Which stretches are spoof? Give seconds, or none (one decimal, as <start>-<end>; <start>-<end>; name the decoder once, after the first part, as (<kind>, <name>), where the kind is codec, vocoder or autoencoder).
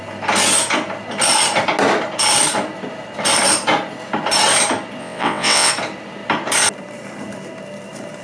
5.0-5.7 (vocoder, WaveNeXt)